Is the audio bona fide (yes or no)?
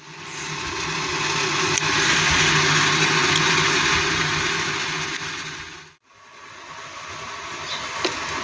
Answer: yes